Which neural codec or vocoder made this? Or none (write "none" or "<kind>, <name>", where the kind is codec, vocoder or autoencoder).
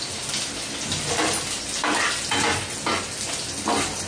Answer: none